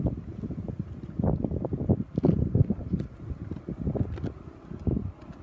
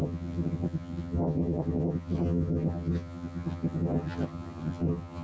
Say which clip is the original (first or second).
first